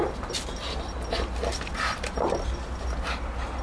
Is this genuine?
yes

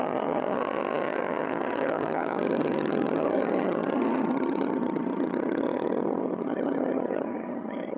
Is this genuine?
no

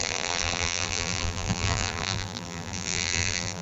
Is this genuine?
no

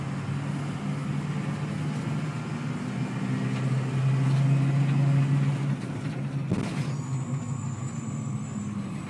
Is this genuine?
yes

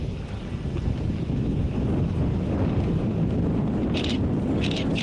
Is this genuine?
yes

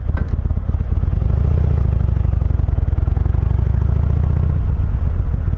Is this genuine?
yes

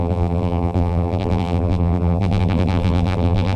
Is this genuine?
no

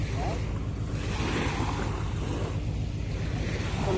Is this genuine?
yes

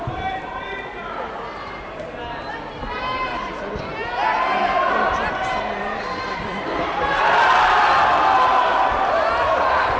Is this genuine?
yes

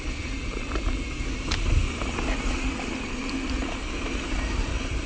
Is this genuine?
yes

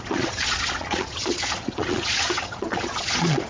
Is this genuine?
no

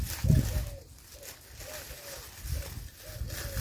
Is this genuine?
yes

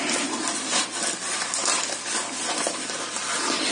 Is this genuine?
yes